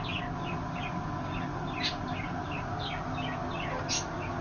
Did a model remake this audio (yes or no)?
no